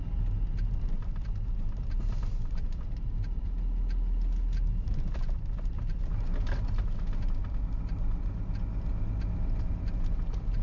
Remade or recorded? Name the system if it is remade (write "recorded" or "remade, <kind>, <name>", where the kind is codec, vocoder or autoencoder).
recorded